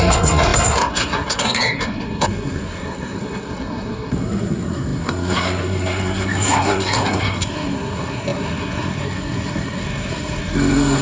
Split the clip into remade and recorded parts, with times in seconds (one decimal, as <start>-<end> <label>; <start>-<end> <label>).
0.0-11.0 remade